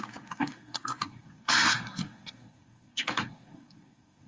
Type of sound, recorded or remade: remade